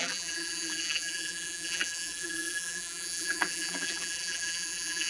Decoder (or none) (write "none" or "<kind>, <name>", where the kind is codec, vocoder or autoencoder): vocoder, BigVGAN v2